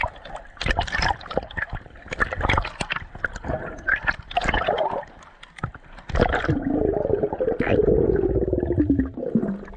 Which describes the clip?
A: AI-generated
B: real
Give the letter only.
B